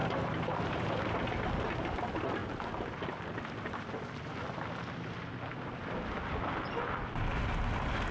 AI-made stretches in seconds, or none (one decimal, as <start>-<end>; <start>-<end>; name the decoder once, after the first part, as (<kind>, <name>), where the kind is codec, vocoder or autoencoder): 0.0-1.2 (vocoder, BigVGAN v2)